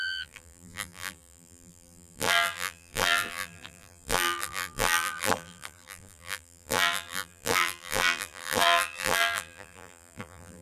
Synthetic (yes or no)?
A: yes